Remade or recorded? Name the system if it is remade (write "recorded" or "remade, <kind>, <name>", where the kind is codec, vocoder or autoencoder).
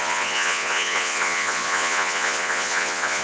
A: remade, vocoder, Vocos